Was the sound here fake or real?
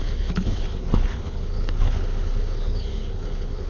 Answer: fake